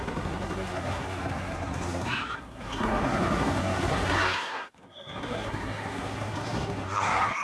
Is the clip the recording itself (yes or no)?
no